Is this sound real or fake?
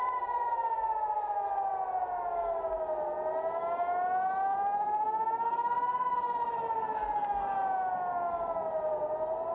real